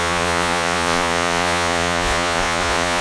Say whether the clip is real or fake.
fake